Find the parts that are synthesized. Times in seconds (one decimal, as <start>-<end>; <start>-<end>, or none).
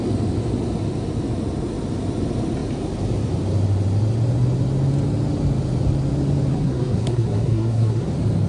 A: 6.5-8.1